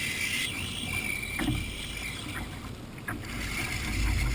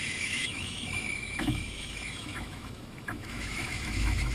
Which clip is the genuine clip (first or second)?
first